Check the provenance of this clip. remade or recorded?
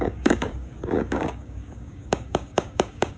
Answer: remade